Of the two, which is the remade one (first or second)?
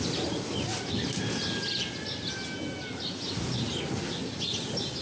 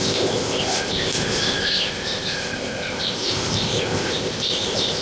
second